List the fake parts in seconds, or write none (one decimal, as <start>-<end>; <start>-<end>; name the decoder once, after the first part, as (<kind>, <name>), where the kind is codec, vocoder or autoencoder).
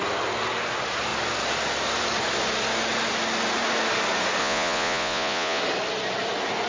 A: 4.4-5.6 (vocoder, Vocos)